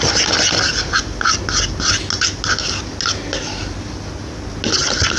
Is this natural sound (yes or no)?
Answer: yes